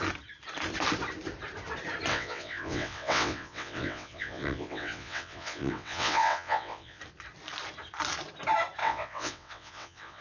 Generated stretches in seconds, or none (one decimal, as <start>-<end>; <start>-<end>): 2.1-7.0; 8.8-10.2